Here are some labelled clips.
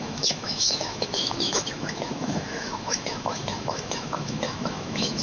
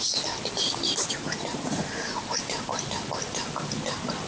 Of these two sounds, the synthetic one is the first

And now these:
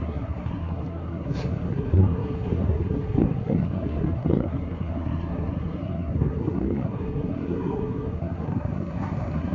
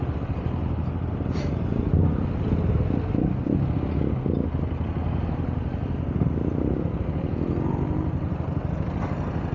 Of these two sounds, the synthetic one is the first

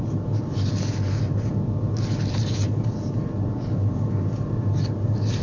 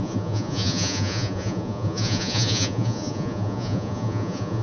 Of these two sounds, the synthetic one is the second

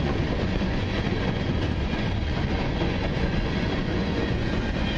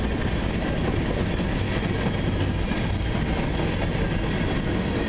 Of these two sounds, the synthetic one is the first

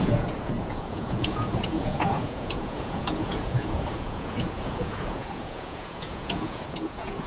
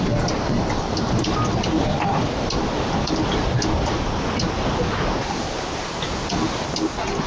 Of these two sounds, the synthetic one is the first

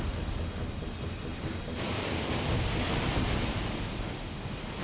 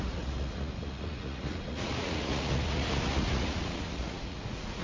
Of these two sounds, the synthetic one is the second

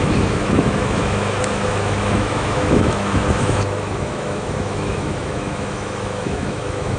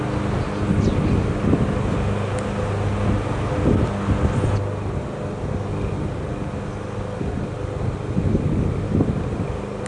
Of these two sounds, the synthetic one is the first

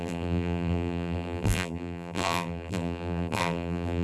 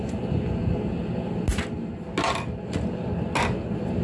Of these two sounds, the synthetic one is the first